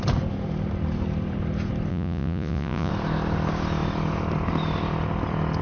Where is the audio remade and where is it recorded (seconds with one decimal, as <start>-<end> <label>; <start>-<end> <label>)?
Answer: 0.0-1.9 recorded; 1.9-2.9 remade; 2.9-5.6 recorded